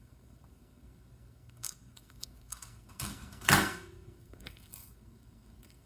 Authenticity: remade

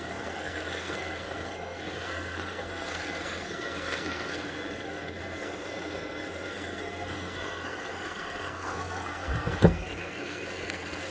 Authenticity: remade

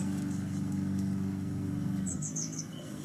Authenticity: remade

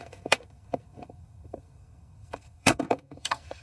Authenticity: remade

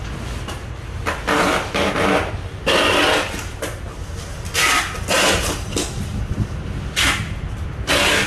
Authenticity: recorded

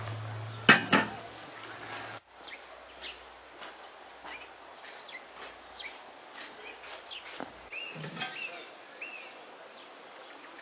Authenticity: recorded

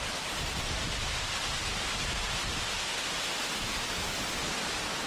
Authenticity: recorded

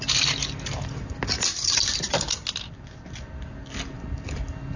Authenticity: recorded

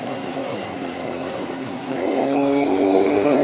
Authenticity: remade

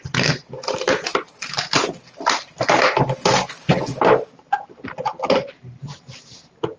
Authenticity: recorded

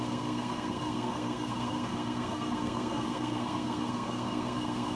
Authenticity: remade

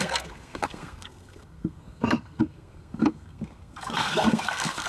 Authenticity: remade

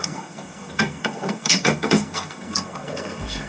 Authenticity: remade